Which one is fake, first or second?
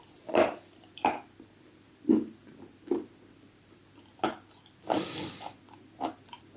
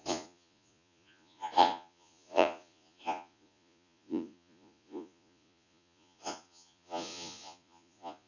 second